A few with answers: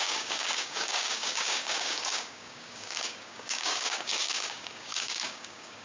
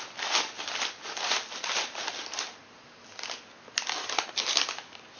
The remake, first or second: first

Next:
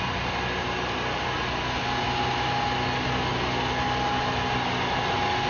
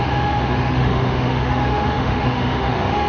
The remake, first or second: second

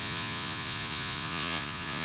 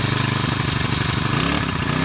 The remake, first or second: first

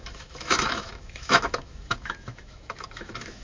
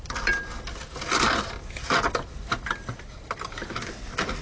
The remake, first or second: first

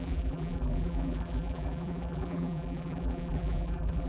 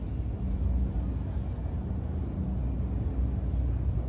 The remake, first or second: first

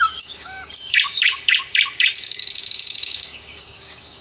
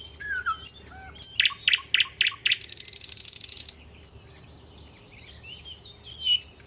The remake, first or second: first